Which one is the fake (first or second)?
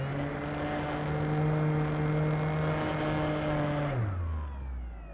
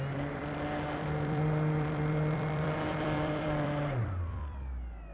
second